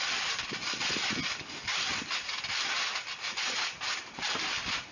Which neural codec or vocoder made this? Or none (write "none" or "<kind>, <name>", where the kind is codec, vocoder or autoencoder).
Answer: none